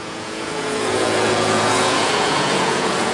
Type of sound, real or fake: fake